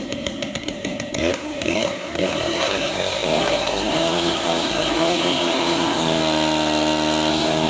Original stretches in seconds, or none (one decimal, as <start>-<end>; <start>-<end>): 6.2-7.3